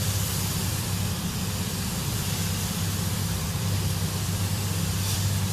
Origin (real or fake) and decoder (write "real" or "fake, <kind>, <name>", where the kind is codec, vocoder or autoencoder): fake, vocoder, BigVGAN v2